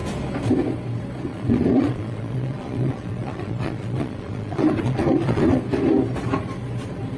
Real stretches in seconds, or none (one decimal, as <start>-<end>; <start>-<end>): 0.0-1.3; 5.6-7.2